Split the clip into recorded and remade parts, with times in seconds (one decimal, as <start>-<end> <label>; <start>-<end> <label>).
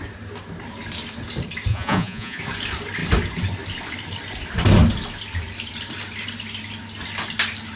0.0-1.7 recorded; 1.7-2.4 remade; 2.4-7.8 recorded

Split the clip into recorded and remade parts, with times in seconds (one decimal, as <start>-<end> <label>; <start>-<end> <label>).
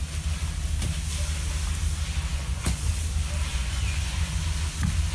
0.0-2.3 recorded; 2.3-2.9 remade; 2.9-3.5 recorded; 3.5-4.4 remade; 4.4-5.1 recorded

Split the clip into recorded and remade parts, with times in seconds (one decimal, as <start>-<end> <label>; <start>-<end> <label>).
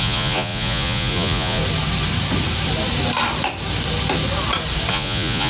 0.0-1.6 remade; 1.6-4.9 recorded; 4.9-5.5 remade